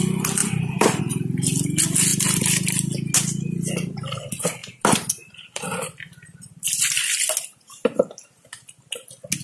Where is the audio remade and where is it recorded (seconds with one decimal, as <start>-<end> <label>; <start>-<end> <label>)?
0.0-0.4 recorded; 0.4-1.0 remade; 1.0-9.4 recorded